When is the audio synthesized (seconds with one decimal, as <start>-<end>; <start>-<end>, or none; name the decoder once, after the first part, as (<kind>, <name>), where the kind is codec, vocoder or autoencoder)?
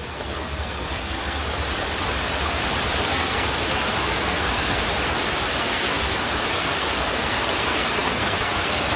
0.0-1.4 (codec, SNAC); 3.0-4.8; 5.6-9.0